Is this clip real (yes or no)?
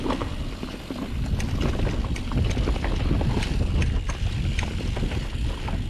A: yes